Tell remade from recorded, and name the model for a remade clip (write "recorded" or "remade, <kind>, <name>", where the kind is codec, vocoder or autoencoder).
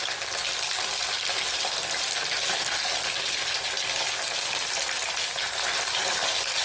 recorded